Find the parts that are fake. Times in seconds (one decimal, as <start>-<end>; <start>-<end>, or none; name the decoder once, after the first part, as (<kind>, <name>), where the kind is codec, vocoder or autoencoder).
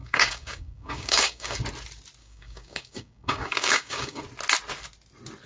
0.0-1.6 (codec, DAC); 2.2-4.2